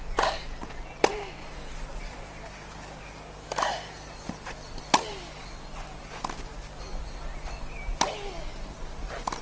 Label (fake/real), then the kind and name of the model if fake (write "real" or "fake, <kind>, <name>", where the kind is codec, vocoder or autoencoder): real